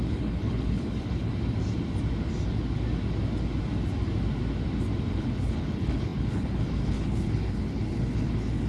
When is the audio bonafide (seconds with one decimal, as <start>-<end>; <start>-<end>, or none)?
1.3-5.1